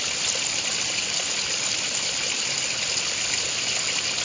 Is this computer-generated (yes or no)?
no